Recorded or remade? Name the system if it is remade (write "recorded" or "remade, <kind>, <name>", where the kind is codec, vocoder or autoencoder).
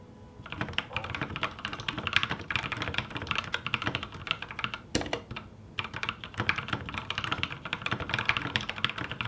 recorded